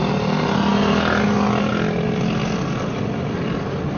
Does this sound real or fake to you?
real